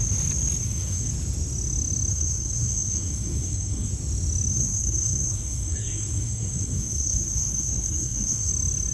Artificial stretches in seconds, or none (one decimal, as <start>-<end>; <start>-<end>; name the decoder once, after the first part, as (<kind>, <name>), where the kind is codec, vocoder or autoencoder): 0.6-1.1 (codec, SNAC); 2.1-3.9; 4.5-8.5